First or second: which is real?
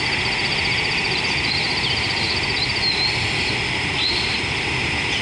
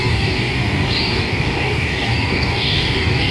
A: first